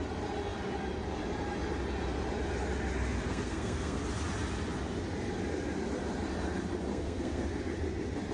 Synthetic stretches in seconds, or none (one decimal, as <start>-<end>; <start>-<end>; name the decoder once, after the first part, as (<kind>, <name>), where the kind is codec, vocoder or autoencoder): 3.3-4.0 (codec, SNAC); 6.9-7.8